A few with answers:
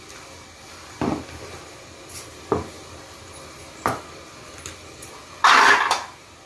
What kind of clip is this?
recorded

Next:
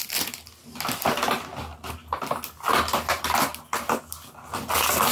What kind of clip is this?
recorded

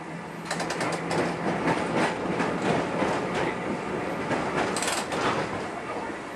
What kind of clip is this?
recorded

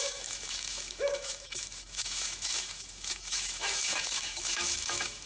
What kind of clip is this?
remade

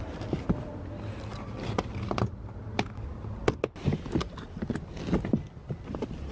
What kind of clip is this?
recorded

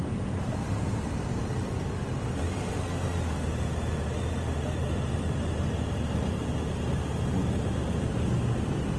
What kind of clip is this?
recorded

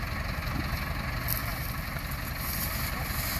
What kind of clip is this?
recorded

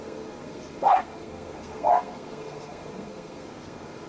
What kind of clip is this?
remade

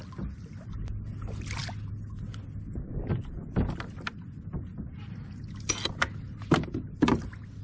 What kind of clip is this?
recorded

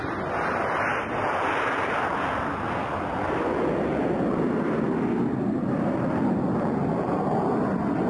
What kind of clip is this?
recorded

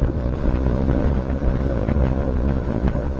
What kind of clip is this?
remade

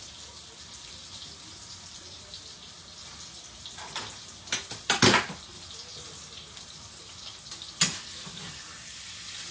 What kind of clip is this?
recorded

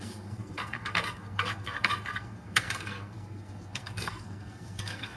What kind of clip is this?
remade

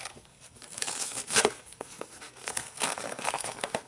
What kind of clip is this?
remade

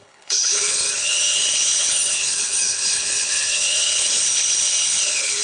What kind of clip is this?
remade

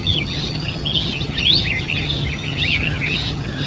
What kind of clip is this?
remade